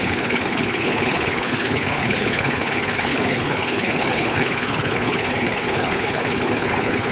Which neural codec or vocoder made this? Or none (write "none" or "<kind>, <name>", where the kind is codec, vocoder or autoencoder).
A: codec, HILCodec